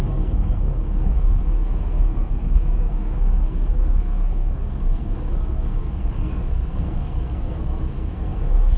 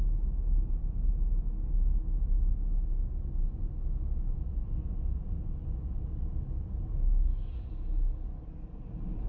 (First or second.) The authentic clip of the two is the second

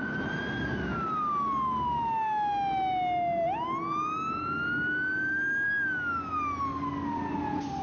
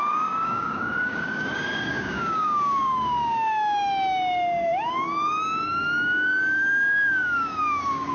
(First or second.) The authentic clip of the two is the first